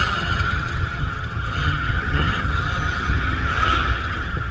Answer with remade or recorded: remade